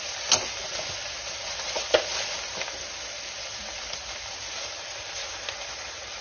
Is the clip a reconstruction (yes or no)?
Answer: yes